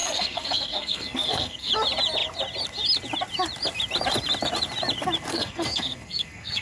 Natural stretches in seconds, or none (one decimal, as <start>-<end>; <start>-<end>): 1.7-5.3